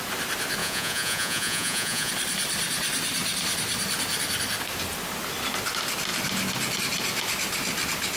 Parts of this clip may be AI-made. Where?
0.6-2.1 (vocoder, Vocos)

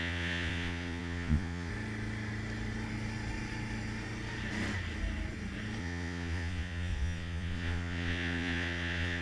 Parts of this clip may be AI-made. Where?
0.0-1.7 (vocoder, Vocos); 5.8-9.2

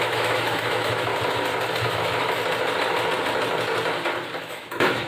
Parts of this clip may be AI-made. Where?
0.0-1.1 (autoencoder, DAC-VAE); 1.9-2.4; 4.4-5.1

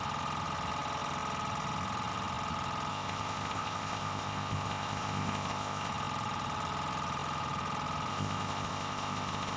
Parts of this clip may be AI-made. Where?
2.9-5.9 (codec, ZipCodec); 8.1-9.6

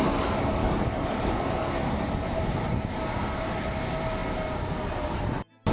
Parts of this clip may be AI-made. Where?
0.6-1.7 (codec, DAC)

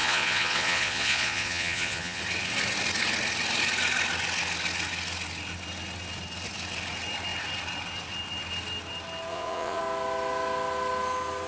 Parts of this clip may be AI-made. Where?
0.0-2.2 (vocoder, Vocos); 9.3-9.8

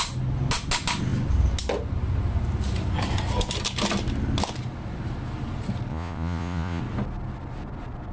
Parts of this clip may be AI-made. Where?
5.9-6.8 (vocoder, Vocos)